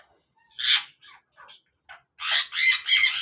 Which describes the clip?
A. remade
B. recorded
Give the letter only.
B